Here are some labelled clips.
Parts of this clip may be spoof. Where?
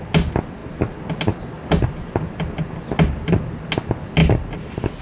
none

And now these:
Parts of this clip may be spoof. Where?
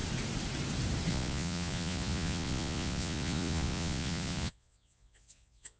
1.1-5.8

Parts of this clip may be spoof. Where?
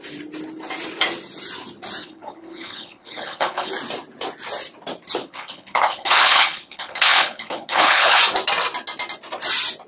2.0-3.7; 5.2-8.2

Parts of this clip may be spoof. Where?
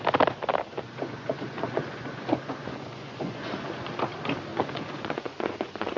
0.7-3.9; 4.5-6.0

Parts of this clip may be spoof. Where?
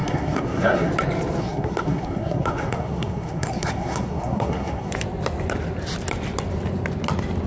0.0-0.9; 1.4-4.9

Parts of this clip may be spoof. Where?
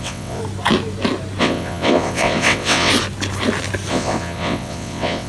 0.0-0.4; 1.4-2.9; 3.9-5.3